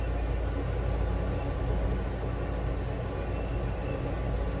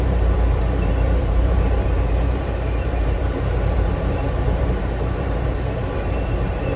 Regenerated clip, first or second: second